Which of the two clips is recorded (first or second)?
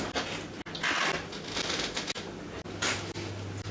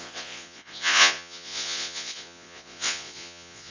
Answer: first